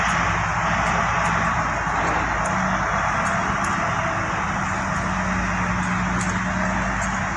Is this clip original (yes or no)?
yes